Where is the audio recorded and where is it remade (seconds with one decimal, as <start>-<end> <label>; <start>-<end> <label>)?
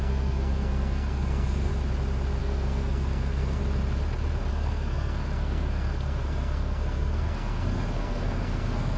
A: 0.0-1.7 remade; 1.7-2.4 recorded; 2.4-3.6 remade; 3.6-4.5 recorded; 4.5-9.0 remade